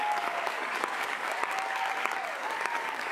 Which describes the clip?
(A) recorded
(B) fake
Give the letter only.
B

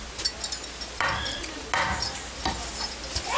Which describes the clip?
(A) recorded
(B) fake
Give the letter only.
A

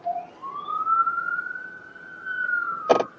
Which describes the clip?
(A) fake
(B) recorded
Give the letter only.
B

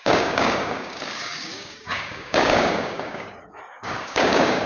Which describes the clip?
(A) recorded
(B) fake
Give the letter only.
B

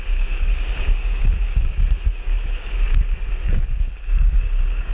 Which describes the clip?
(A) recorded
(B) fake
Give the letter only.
B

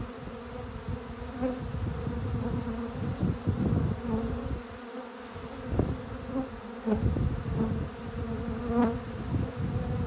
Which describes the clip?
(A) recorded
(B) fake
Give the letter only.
A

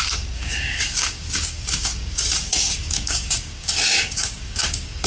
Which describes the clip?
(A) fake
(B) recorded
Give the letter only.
A